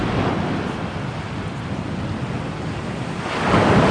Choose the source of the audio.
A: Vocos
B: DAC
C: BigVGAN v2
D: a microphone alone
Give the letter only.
D